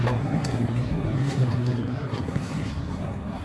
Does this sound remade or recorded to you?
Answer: remade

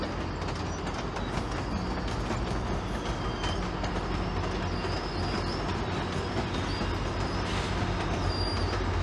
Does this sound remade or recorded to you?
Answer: recorded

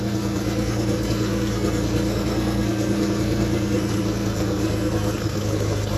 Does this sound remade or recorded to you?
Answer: remade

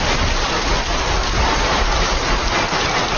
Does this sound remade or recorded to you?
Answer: recorded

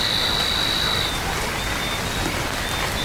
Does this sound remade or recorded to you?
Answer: recorded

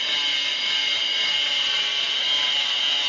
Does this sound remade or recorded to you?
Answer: recorded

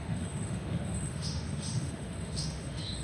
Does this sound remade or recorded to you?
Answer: remade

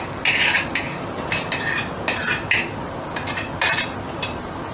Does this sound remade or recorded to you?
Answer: recorded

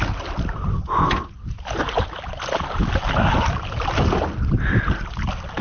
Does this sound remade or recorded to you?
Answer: recorded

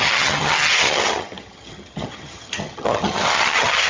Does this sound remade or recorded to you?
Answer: remade